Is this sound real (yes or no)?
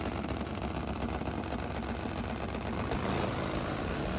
yes